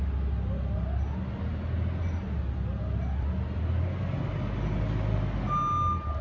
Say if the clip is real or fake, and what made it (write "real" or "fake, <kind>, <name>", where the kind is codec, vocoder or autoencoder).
real